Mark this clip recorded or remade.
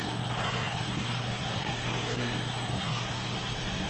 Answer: remade